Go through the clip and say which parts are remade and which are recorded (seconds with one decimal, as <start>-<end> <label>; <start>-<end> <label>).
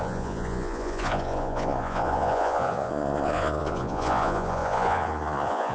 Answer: 0.0-5.7 remade